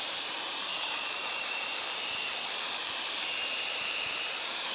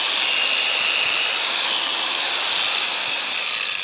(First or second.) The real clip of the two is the second